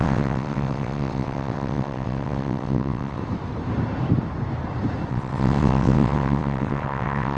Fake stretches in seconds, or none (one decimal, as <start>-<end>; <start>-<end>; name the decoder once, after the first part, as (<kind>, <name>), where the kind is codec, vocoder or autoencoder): 0.0-3.2 (vocoder, WaveNeXt); 5.1-7.4